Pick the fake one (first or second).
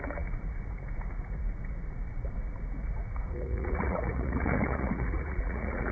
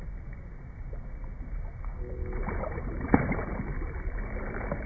first